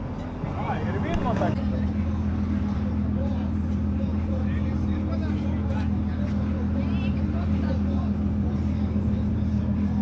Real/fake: real